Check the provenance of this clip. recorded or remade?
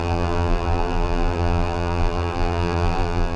remade